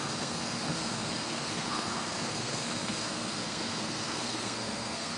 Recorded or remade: remade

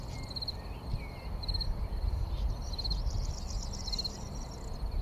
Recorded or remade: recorded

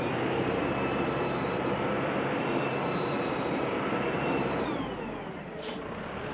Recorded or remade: remade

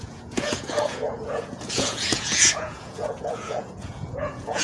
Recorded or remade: remade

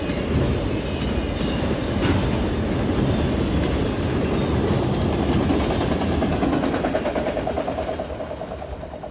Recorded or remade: recorded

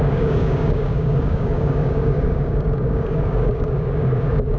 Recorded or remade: remade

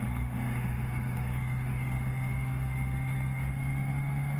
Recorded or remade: remade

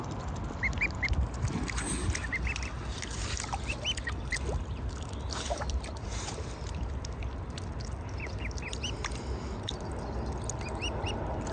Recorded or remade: recorded